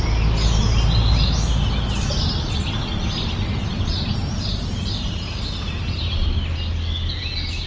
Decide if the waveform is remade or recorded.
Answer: recorded